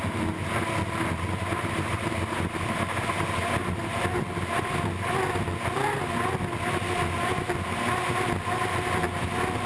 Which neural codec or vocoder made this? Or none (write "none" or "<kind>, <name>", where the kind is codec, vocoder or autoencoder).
none